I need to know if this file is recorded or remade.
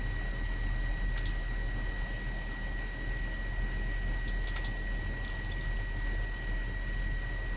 recorded